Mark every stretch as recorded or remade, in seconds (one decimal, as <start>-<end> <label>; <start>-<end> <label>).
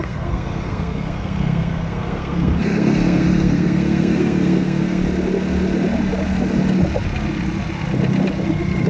0.0-5.0 remade; 5.0-8.9 recorded